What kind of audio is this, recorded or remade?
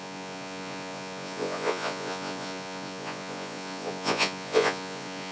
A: remade